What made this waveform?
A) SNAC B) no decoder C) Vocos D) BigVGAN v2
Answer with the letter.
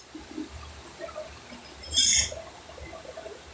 B